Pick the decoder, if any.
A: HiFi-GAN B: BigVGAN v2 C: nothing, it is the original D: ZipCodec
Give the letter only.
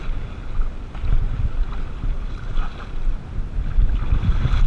C